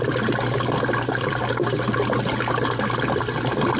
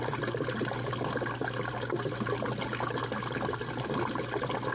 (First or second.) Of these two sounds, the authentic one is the second